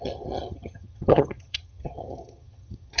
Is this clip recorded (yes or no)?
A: no